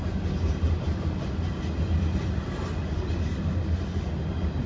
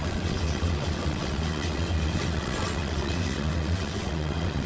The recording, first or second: first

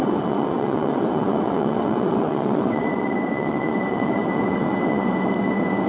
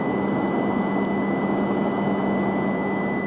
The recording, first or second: second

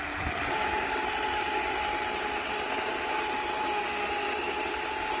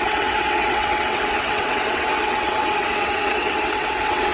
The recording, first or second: first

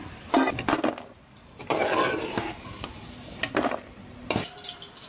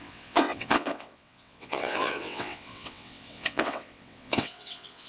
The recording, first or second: first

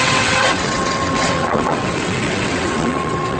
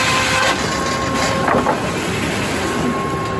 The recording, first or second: second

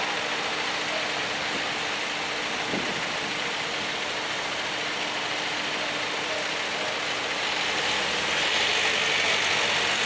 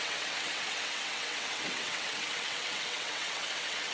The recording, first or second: first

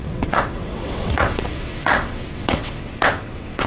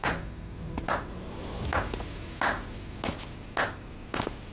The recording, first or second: second